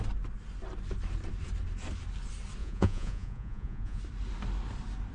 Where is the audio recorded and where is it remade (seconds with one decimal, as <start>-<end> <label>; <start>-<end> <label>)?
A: 0.0-2.6 recorded; 2.6-4.0 remade; 4.0-5.1 recorded